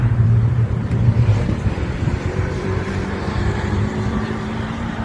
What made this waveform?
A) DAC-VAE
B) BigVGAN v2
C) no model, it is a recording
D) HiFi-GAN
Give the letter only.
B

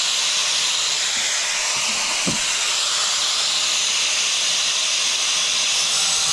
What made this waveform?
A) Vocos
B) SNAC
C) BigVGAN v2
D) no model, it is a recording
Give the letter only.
D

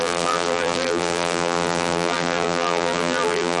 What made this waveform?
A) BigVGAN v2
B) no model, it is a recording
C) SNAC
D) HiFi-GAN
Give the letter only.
A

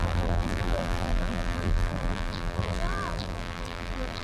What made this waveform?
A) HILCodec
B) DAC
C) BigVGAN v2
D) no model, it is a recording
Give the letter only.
C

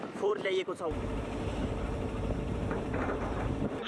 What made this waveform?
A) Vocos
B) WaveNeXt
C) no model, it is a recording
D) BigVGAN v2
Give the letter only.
D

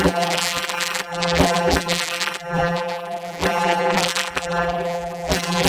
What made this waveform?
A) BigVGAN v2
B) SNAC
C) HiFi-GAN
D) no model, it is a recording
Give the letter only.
A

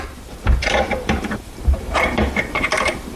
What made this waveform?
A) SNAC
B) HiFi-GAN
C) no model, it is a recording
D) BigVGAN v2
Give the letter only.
D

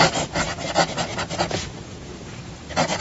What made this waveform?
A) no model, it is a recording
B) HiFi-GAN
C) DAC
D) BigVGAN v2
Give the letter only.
A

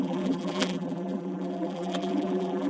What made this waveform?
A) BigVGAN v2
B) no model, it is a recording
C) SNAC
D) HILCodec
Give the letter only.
A